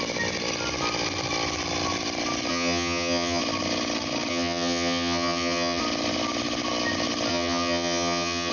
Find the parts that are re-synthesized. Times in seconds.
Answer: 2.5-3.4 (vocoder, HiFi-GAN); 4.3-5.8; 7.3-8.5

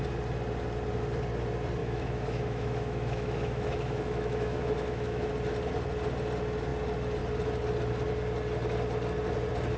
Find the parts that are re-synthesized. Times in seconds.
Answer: 1.8-5.3 (autoencoder, DAC-VAE)

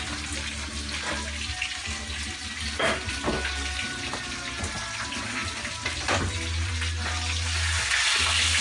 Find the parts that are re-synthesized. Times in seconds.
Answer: none

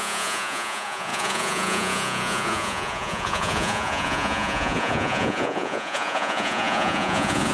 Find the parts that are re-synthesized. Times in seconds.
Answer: 0.0-7.5 (vocoder, Vocos)

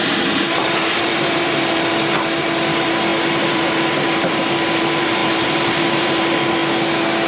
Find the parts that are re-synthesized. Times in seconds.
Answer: 0.0-6.6 (vocoder, BigVGAN v2)

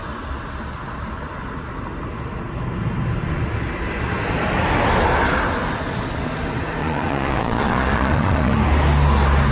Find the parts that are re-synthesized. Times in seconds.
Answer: 6.8-8.6 (vocoder, Vocos)

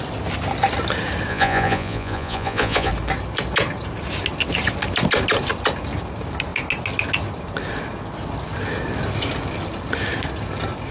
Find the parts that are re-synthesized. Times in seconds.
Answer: 1.3-2.9 (vocoder, Vocos)

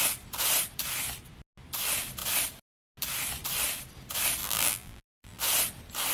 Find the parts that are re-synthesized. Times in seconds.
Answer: 4.4-5.4 (vocoder, BigVGAN v2)